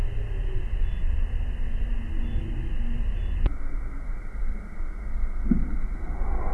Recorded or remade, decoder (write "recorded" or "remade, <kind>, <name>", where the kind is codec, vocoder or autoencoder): recorded